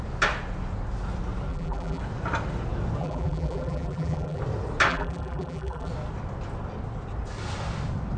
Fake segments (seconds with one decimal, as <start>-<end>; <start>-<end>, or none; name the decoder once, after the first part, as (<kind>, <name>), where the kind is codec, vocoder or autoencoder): 1.5-2.0 (vocoder, BigVGAN v2); 3.0-4.4; 4.9-5.9